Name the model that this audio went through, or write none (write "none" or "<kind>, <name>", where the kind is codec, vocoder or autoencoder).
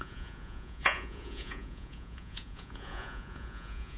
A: vocoder, Vocos